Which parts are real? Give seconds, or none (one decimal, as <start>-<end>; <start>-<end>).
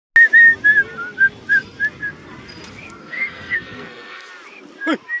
0.0-3.0; 4.3-5.2